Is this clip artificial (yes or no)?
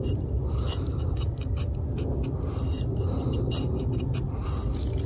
no